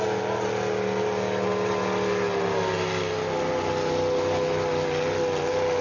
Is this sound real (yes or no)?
yes